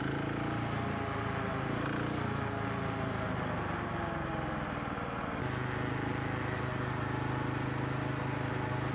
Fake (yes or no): no